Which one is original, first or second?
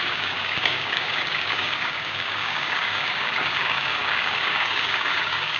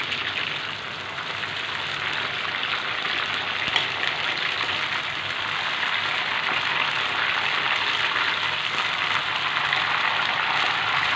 second